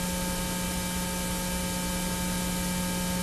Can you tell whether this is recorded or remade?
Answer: recorded